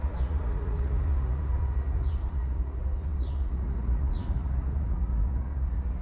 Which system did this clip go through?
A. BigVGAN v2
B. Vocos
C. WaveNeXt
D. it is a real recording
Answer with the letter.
B